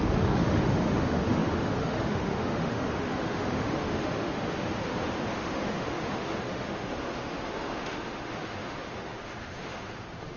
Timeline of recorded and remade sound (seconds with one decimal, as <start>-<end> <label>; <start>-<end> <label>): 0.0-10.4 remade